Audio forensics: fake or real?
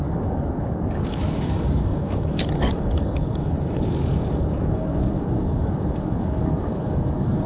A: fake